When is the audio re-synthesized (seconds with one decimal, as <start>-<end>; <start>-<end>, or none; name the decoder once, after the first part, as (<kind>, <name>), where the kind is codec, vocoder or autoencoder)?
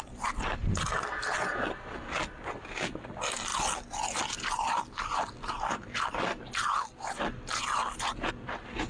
none